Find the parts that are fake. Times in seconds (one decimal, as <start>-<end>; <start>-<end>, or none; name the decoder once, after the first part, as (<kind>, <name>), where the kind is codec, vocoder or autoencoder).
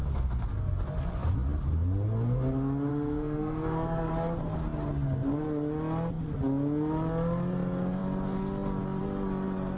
0.0-0.5 (codec, SNAC); 2.9-4.1